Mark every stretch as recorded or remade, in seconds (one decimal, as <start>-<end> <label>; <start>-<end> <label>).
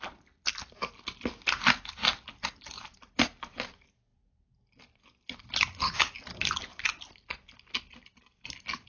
0.0-8.9 recorded